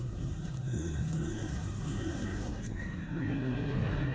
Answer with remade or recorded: remade